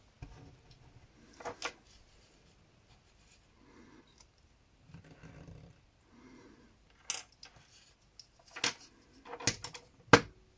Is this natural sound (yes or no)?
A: yes